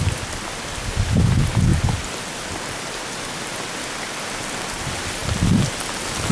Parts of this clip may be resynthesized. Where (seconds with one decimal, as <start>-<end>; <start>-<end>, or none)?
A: none